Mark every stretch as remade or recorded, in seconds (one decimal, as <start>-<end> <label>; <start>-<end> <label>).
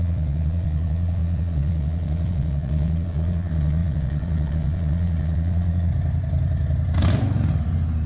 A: 0.0-5.9 remade; 5.9-8.1 recorded